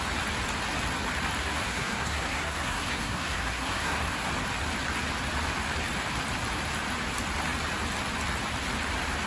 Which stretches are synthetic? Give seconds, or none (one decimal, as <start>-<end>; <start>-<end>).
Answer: 1.4-4.3